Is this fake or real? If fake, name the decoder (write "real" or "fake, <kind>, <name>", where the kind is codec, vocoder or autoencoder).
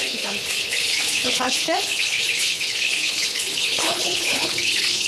fake, codec, HILCodec